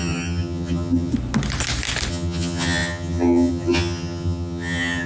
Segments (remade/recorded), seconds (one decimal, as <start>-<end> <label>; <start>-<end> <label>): 0.0-1.1 remade; 1.1-2.1 recorded; 2.1-5.1 remade